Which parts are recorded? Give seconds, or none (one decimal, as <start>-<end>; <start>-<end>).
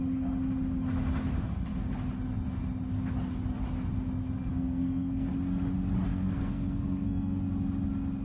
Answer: 0.0-4.5; 5.3-6.1; 7.4-8.2